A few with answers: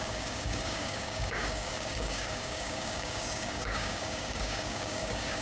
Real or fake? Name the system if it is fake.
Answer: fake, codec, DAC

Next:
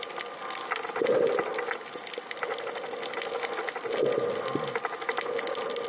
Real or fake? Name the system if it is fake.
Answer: real